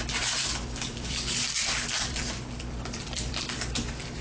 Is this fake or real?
fake